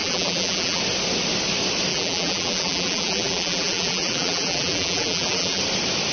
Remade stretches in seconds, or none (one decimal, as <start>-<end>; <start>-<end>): 0.0-0.8; 1.9-5.6